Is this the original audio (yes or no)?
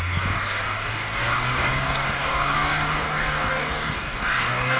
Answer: no